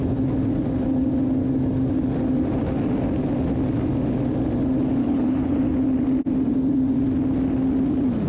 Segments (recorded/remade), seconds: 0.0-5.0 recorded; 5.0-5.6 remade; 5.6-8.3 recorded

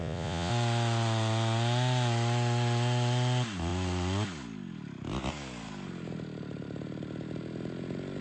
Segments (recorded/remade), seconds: 0.0-0.5 remade; 0.5-8.2 recorded